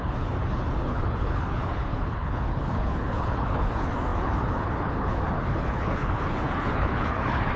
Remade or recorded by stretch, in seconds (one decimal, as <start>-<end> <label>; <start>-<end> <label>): 0.0-7.6 remade